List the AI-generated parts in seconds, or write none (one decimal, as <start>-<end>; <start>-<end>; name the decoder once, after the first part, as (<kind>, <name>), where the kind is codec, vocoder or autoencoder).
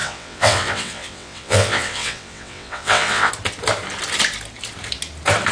0.0-3.3 (vocoder, WaveNeXt)